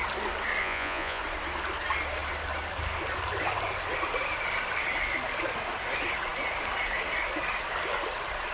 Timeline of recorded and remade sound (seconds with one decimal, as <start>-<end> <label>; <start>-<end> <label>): 0.0-0.6 recorded; 0.6-1.2 remade; 1.2-8.5 recorded